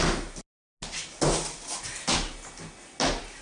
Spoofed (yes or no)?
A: no